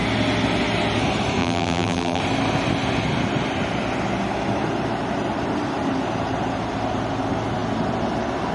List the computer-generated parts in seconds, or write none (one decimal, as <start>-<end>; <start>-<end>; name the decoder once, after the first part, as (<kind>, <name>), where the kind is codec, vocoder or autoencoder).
1.4-2.2 (vocoder, BigVGAN v2)